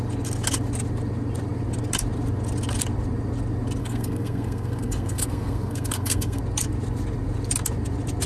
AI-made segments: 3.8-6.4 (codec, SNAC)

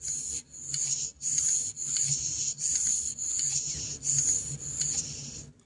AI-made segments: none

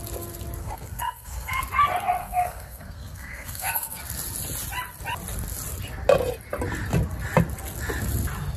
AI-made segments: 0.6-1.6 (codec, SNAC); 2.2-4.0

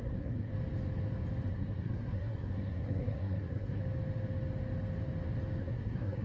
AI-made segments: 0.0-0.5 (codec, SNAC); 1.5-3.8; 5.6-6.2

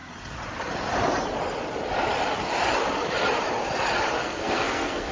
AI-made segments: 4.2-5.1 (codec, SNAC)

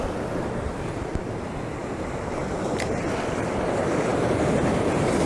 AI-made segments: none

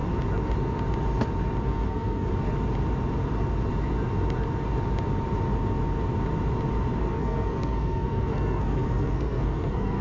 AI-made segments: 1.6-2.3 (codec, SNAC); 7.0-10.0

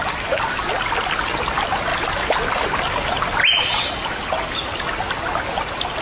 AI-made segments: none